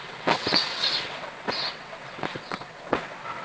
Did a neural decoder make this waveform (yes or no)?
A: yes